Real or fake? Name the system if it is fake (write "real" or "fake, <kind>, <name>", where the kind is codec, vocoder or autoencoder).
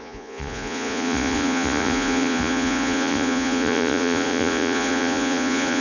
fake, vocoder, Vocos